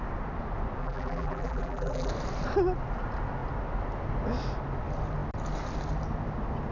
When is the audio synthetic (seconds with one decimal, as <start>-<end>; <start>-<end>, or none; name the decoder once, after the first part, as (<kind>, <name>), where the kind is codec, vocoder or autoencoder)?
0.8-2.1 (vocoder, BigVGAN v2)